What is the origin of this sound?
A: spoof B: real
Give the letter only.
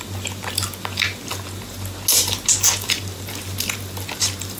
B